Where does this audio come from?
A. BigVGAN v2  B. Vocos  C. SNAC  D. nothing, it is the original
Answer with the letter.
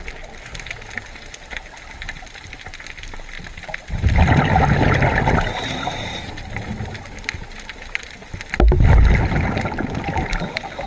D